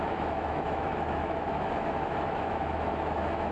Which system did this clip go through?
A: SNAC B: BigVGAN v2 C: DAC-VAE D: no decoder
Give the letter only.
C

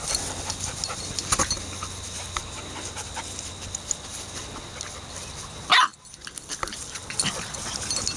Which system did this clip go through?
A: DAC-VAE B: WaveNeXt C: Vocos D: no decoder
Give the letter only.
D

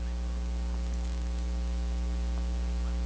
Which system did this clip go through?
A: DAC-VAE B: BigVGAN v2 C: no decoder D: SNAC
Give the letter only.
C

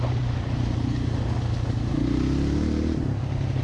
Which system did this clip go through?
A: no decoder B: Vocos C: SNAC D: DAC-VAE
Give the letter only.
A